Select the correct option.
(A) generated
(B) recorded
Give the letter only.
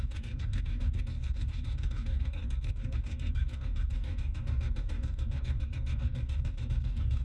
A